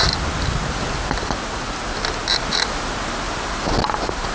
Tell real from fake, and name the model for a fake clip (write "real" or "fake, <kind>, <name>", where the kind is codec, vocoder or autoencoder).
real